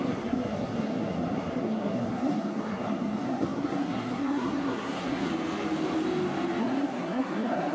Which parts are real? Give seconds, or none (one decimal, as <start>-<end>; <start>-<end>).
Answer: 5.3-6.6